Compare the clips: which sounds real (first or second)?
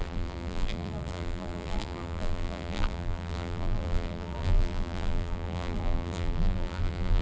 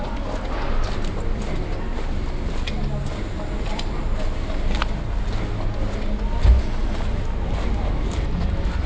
second